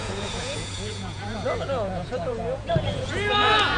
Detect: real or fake fake